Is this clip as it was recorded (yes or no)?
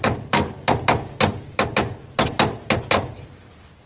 yes